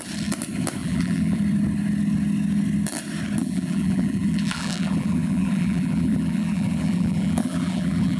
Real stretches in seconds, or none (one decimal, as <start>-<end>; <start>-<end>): 0.0-0.8; 1.4-3.4